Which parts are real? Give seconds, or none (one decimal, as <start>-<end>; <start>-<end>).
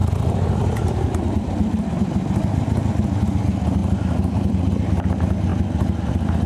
3.2-3.8; 4.5-6.5